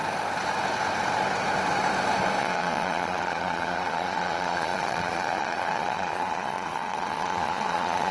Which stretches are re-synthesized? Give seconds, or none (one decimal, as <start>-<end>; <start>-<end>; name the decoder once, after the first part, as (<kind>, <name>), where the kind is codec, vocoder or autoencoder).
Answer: 2.4-8.1 (vocoder, Vocos)